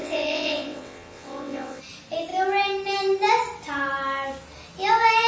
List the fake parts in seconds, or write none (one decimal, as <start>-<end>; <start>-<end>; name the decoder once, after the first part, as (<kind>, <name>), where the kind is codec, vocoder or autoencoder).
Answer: 0.0-1.8 (vocoder, WaveNeXt)